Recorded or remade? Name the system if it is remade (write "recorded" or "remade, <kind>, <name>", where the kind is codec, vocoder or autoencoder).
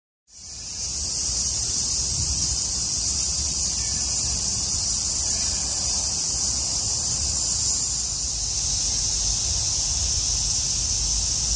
recorded